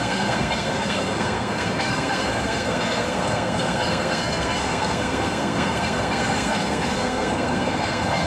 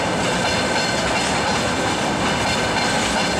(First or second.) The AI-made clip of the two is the first